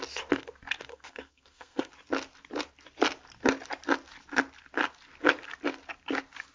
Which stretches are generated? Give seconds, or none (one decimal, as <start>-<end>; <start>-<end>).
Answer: 0.9-1.9